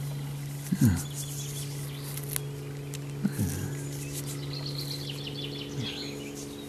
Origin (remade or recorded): recorded